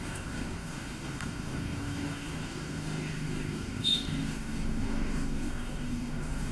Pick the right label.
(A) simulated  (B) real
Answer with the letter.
A